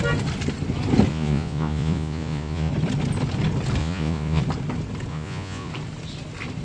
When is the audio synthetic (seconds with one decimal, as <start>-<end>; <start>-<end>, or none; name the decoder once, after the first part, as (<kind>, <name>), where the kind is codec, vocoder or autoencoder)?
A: 1.1-2.7 (vocoder, Vocos); 3.8-4.4; 5.1-5.7